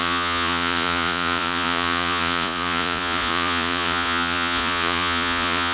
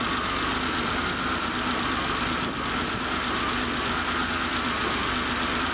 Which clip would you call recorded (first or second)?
second